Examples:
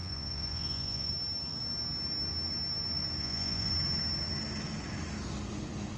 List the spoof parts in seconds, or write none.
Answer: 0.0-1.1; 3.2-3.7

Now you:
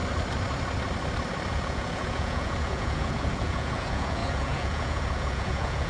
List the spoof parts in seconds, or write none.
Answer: 1.5-5.9

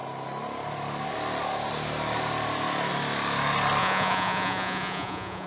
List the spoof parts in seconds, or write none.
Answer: 3.8-5.5

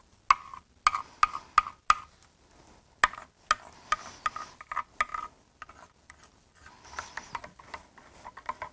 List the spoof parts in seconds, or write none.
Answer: none